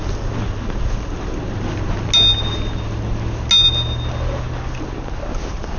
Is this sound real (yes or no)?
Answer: yes